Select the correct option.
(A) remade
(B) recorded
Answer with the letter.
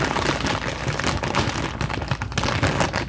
B